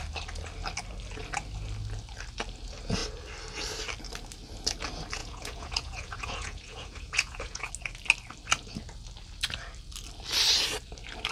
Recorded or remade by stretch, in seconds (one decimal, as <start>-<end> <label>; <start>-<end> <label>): 0.0-5.2 recorded; 5.2-7.7 remade; 7.7-11.3 recorded